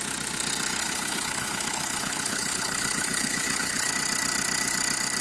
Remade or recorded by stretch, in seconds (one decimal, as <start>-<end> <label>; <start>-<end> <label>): 0.0-0.8 recorded; 0.8-3.9 remade; 3.9-5.2 recorded